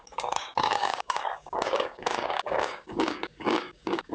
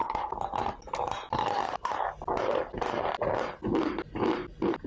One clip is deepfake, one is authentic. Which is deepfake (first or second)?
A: first